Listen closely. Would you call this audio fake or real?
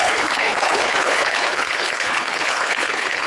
fake